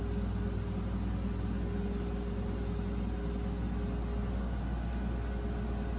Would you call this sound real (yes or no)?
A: yes